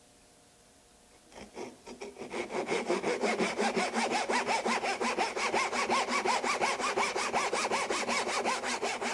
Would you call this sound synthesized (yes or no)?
no